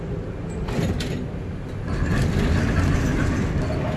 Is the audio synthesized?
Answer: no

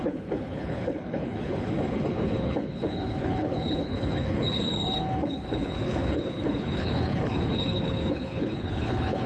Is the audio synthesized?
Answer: yes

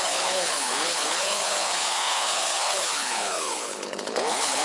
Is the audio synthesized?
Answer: yes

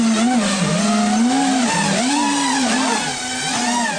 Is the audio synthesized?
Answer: no